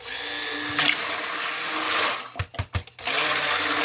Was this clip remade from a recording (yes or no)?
no